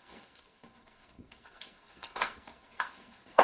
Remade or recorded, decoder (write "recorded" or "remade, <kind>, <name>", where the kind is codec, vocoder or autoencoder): remade, codec, SNAC